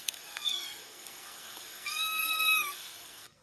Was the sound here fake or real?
fake